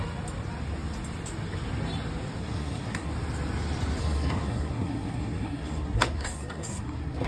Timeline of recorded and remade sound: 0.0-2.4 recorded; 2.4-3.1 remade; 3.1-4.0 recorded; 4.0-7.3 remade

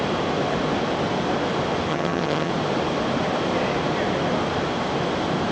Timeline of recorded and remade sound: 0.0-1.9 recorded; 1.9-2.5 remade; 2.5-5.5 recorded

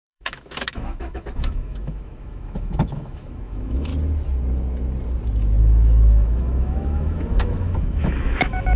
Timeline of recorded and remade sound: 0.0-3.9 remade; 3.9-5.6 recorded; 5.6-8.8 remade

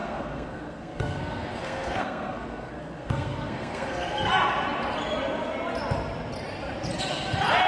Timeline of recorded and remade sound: 0.0-4.3 remade; 4.3-7.7 recorded

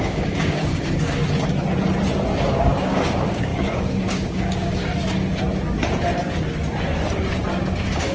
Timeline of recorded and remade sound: 0.0-1.2 remade; 1.2-2.5 recorded; 2.5-4.9 remade; 4.9-7.5 recorded; 7.5-8.1 remade

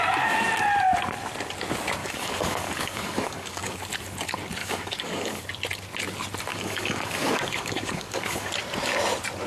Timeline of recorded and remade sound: 0.0-2.0 recorded; 2.0-3.8 remade; 3.8-4.6 recorded; 4.6-5.4 remade; 5.4-6.5 recorded; 6.5-8.5 remade; 8.5-9.5 recorded

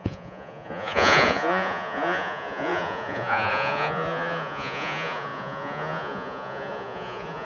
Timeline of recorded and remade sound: 0.0-7.4 remade

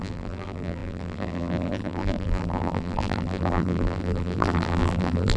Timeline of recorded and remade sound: 0.0-5.4 remade